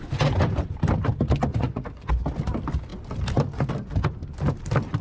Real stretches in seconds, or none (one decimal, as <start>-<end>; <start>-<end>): 0.0-1.5; 2.1-5.0